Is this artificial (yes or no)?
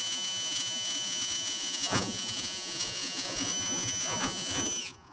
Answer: yes